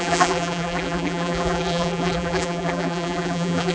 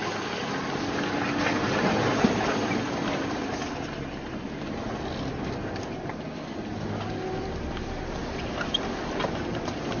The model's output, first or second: first